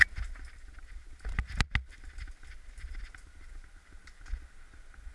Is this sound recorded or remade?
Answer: recorded